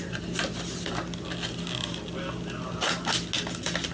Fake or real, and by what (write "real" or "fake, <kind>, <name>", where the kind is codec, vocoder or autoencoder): real